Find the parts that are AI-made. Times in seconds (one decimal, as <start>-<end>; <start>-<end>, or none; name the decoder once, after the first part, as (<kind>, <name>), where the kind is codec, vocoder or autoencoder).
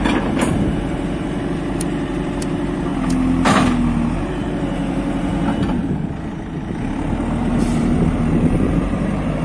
0.0-2.9 (vocoder, BigVGAN v2); 4.2-5.3; 7.4-9.4